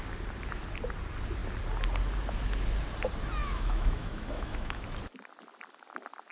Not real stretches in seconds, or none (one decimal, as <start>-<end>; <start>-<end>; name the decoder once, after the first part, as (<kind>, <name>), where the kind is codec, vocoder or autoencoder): 3.4-4.8 (autoencoder, DAC-VAE)